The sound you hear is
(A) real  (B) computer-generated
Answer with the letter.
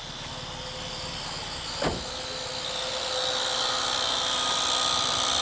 A